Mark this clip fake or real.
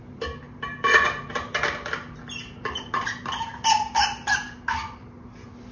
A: real